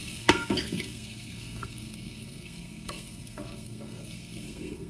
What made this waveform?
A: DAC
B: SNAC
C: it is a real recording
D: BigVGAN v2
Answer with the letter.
B